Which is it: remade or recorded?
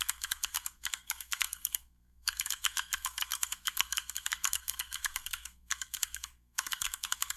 remade